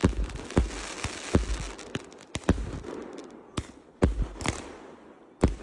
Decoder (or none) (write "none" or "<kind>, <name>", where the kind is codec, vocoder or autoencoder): none